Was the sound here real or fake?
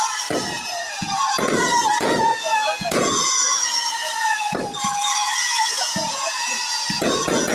fake